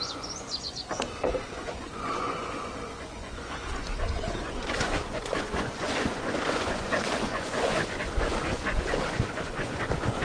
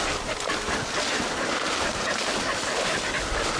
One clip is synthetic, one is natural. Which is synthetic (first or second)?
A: first